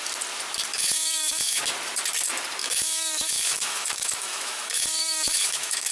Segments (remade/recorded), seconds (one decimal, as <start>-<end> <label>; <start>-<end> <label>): 0.0-0.7 recorded; 0.7-1.6 remade; 1.6-2.6 recorded; 2.6-5.9 remade